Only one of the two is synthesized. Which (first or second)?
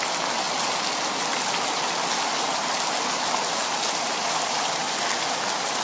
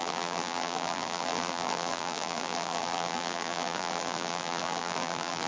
second